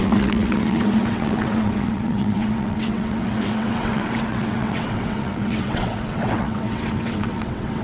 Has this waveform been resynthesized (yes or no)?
yes